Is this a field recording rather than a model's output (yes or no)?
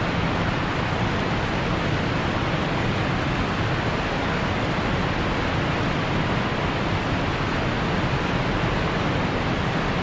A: yes